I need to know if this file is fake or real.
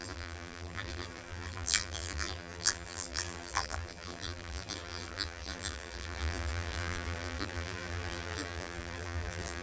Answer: fake